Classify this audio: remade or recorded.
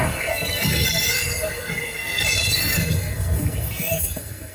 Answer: remade